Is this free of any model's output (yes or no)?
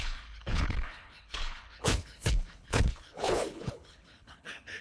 no